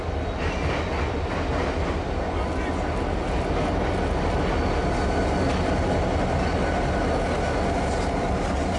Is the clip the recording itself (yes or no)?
yes